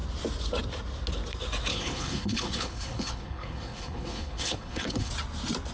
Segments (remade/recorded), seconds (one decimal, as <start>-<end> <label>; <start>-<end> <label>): 0.0-1.7 recorded; 1.7-5.1 remade; 5.1-5.7 recorded